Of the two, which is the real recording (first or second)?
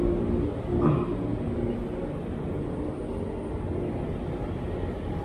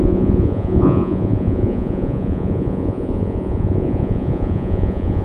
first